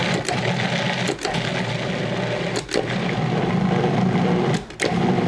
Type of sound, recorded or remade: recorded